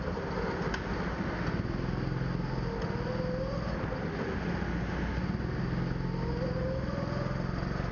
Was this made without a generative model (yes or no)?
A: yes